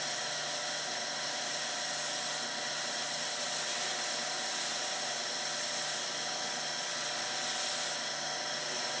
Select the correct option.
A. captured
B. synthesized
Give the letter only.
A